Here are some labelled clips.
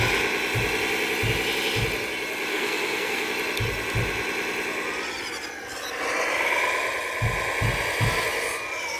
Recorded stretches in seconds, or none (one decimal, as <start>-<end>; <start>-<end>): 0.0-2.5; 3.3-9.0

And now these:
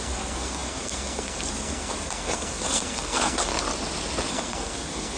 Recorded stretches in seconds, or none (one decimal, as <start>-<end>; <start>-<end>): 3.5-4.3

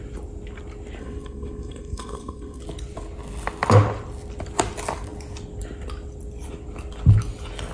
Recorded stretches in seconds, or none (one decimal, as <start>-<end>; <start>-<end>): 0.0-1.0; 2.6-7.7

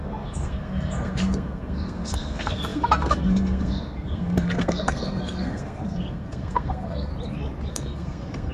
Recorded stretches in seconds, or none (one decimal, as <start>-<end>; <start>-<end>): 7.1-7.7

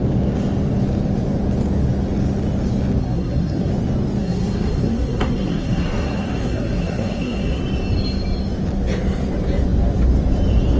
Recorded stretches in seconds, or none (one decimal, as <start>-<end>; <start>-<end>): 0.0-3.0; 3.7-4.2; 7.6-10.8

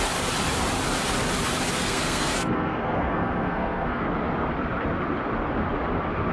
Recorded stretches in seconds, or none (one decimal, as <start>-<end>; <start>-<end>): 0.0-1.8; 4.0-6.3

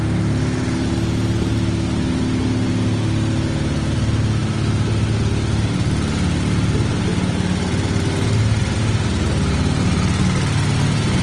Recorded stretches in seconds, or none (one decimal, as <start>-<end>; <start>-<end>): 0.0-11.2

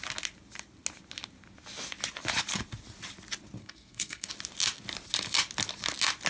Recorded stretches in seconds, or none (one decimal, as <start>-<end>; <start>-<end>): 0.0-3.6; 4.3-6.3